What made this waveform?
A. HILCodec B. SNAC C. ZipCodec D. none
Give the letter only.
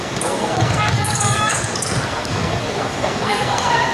B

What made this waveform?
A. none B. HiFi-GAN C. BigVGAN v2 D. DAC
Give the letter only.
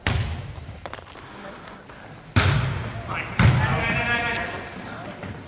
A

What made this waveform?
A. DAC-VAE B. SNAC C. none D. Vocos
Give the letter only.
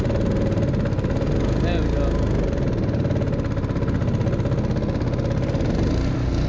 C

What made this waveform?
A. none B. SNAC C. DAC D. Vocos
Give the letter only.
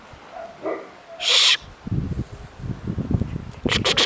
A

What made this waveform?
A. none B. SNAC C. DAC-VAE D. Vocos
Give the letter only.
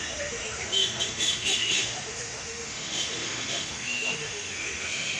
C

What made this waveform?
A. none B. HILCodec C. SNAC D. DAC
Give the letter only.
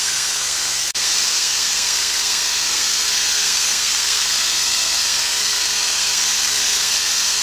C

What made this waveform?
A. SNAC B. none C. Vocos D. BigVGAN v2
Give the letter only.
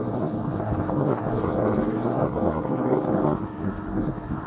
A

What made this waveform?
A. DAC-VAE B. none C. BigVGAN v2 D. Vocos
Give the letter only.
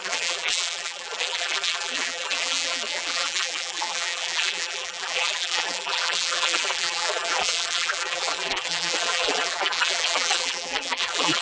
C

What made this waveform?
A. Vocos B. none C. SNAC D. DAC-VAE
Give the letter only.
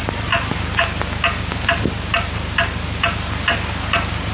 B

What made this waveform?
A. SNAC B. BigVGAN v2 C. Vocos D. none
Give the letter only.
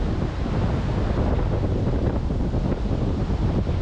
D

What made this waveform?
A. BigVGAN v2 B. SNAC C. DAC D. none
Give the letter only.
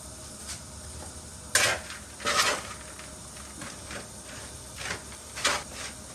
D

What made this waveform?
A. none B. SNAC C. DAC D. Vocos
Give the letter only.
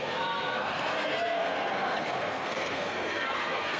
B